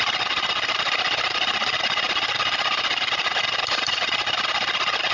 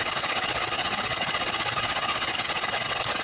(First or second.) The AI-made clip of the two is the second